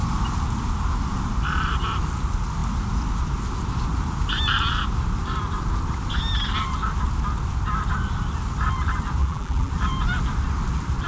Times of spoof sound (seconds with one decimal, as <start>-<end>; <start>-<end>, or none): 9.2-9.7